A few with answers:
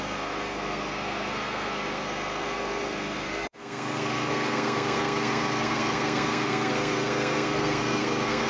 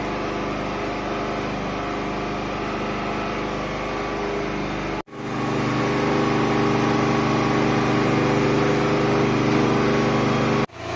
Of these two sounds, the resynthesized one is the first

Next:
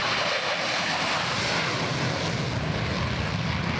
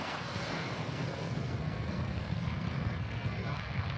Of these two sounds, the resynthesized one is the second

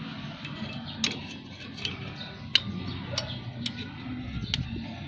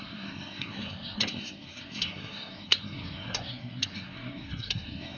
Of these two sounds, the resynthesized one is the second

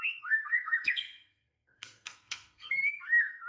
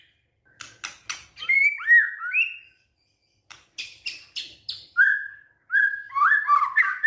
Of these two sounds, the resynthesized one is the first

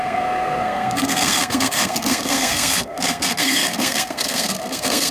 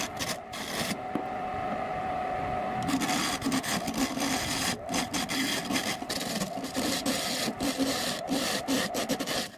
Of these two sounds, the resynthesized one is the first